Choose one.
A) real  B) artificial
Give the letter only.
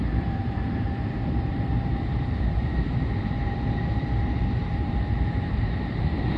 B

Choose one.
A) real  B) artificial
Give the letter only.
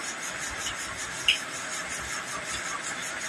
A